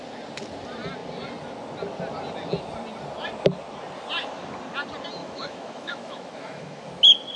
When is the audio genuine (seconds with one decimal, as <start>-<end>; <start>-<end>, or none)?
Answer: 0.0-5.2; 6.8-7.4